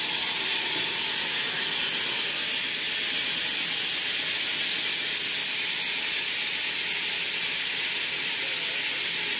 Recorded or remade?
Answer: recorded